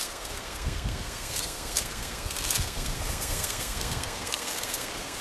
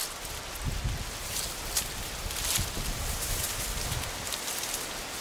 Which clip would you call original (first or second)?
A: second